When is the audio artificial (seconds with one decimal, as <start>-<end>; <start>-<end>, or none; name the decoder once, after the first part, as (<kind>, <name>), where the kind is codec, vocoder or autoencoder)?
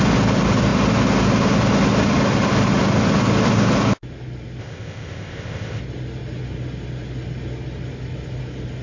4.6-5.8 (codec, ZipCodec)